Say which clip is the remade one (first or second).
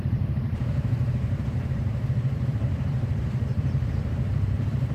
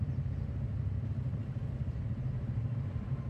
first